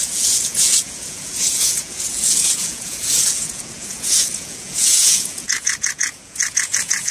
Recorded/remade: remade